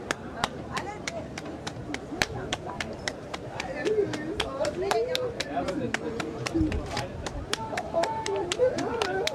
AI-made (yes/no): yes